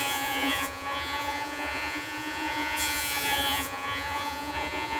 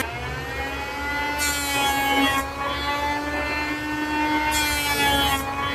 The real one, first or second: second